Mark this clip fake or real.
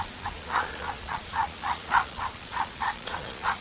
fake